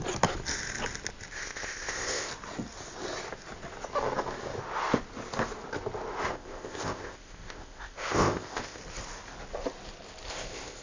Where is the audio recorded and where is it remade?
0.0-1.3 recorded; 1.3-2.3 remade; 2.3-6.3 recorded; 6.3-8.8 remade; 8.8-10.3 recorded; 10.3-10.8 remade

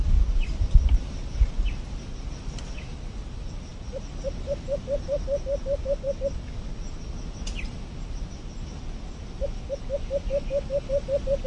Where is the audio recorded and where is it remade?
0.0-3.7 recorded; 3.7-5.4 remade; 5.4-11.5 recorded

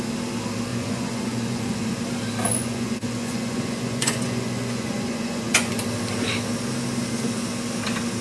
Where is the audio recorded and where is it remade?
0.0-0.7 recorded; 0.7-1.8 remade; 1.8-2.5 recorded; 2.5-5.7 remade; 5.7-8.2 recorded